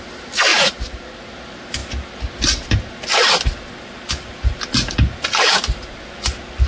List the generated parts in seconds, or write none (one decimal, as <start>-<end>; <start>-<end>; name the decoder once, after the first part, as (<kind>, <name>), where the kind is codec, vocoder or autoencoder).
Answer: 0.5-1.3 (vocoder, BigVGAN v2)